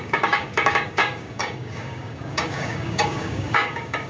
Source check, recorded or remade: remade